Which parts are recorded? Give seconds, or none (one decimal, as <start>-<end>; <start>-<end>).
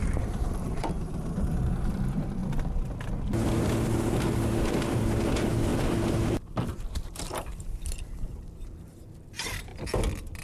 2.4-5.3; 9.7-10.4